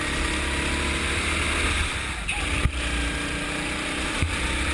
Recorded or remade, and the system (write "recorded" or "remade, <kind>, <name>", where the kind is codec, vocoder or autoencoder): recorded